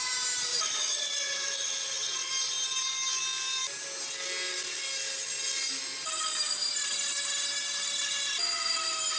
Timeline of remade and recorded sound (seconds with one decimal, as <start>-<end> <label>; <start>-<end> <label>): 0.0-0.5 recorded; 0.5-2.3 remade; 2.3-9.2 recorded